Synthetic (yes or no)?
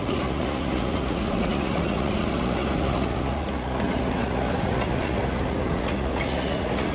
yes